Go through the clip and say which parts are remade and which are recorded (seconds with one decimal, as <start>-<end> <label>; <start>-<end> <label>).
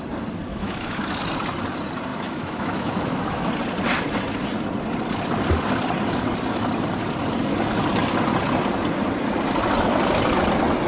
0.0-0.5 recorded; 0.5-1.2 remade; 1.2-2.1 recorded; 2.1-3.5 remade; 3.5-10.9 recorded